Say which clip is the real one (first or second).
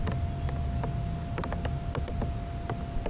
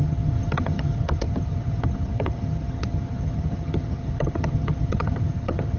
first